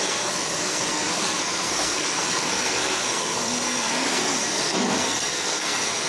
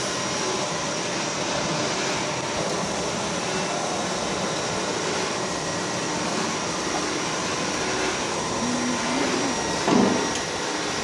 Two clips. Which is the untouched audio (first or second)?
second